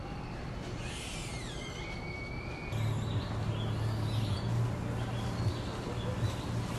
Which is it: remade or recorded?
recorded